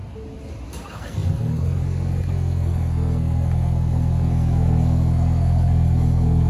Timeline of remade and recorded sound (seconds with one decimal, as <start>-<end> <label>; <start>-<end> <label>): 0.0-0.7 recorded; 0.7-6.5 remade